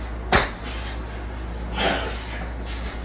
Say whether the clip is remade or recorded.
recorded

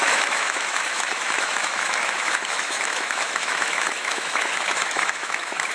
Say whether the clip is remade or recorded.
remade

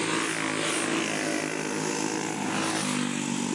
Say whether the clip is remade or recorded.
recorded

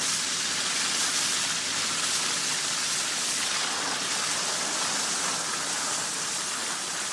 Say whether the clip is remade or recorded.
recorded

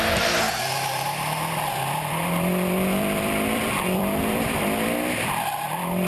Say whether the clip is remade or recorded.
remade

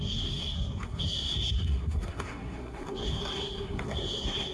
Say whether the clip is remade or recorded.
remade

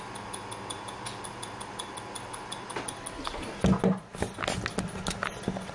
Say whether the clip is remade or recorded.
recorded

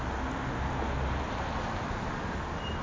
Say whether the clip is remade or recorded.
recorded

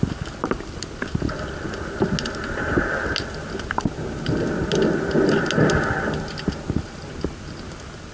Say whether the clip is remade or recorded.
recorded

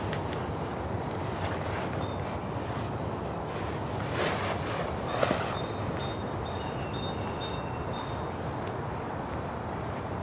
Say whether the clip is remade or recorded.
recorded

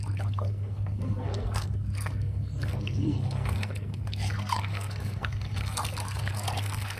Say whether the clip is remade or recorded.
remade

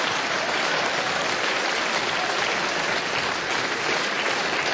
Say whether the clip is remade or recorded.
recorded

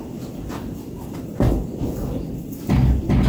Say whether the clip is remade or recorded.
recorded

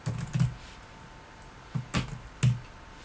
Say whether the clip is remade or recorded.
recorded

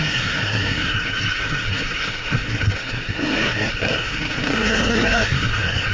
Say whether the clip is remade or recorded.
remade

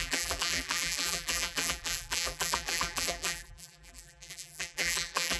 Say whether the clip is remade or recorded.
remade